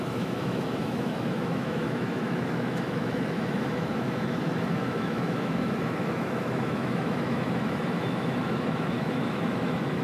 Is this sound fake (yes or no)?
yes